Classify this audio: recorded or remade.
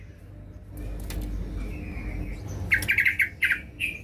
recorded